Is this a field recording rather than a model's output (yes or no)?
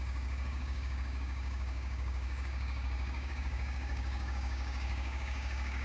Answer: no